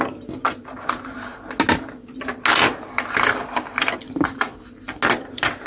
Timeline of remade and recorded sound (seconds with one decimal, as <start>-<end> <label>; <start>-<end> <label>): 0.0-5.7 recorded

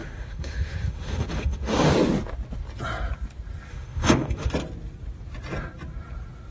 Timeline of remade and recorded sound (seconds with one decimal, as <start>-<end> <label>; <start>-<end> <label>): 0.0-1.9 remade; 1.9-3.7 recorded; 3.7-4.5 remade; 4.5-6.5 recorded

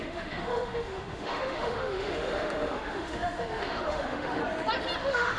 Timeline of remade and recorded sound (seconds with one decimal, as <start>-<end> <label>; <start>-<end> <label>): 0.0-4.4 remade; 4.4-5.0 recorded; 5.0-5.4 remade

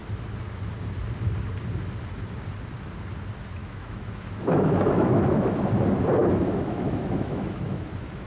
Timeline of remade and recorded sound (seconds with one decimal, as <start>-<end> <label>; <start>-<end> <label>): 0.0-3.6 recorded; 3.6-5.5 remade; 5.5-6.2 recorded; 6.2-8.3 remade

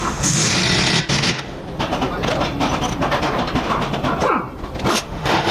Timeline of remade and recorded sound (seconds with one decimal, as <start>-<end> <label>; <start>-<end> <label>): 0.0-0.6 remade; 0.6-1.1 recorded; 1.1-1.6 remade; 1.6-4.9 recorded; 4.9-5.5 remade

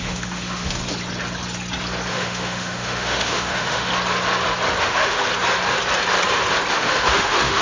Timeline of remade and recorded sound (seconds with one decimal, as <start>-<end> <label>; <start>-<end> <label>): 0.0-0.8 remade; 0.8-2.1 recorded; 2.1-3.9 remade; 3.9-4.8 recorded; 4.8-5.3 remade; 5.3-6.7 recorded; 6.7-7.6 remade

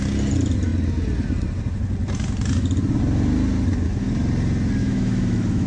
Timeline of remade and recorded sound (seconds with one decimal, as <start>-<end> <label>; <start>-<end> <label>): 0.0-4.8 recorded; 4.8-5.7 remade